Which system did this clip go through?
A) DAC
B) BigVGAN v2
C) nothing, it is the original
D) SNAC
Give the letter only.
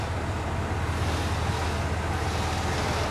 C